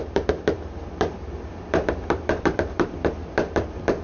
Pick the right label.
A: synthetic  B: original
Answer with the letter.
A